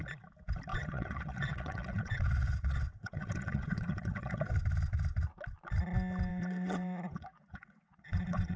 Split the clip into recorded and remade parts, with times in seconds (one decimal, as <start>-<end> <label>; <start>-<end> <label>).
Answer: 0.0-0.7 recorded; 0.7-4.5 remade; 4.5-6.3 recorded; 6.3-8.6 remade